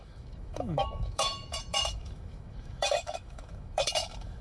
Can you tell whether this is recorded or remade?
remade